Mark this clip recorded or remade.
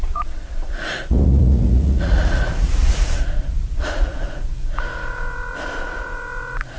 remade